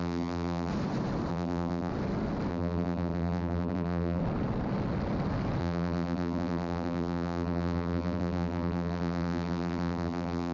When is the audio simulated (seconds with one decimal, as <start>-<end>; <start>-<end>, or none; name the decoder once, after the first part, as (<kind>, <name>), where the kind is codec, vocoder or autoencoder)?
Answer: 0.0-0.7 (vocoder, BigVGAN v2); 1.3-1.9; 2.5-4.2; 5.6-10.5